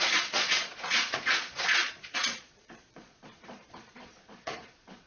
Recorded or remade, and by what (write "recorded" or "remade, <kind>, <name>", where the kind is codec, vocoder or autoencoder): remade, vocoder, Vocos